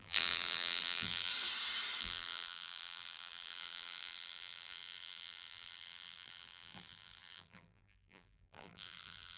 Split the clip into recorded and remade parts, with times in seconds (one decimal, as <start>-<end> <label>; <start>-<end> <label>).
0.0-1.3 remade; 1.3-2.0 recorded; 2.0-9.4 remade